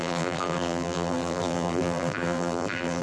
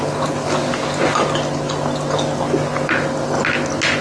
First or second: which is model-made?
first